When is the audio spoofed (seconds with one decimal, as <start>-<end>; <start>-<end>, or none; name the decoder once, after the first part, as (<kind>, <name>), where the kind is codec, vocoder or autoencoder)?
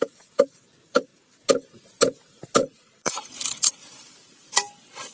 2.6-3.3 (vocoder, Vocos)